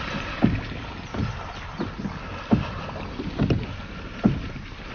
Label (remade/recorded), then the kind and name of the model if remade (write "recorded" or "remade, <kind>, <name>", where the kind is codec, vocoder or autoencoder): recorded